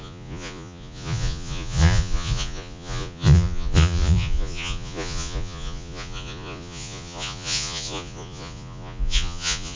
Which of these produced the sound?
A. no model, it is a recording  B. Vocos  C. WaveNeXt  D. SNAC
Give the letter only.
B